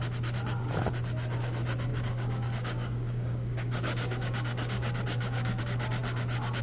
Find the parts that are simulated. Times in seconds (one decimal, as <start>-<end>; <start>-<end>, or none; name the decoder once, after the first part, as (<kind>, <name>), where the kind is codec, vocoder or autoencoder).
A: 1.9-5.6 (codec, DAC)